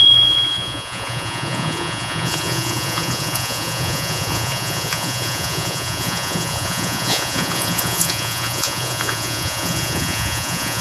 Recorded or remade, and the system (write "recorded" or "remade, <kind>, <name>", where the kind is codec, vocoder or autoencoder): remade, vocoder, Vocos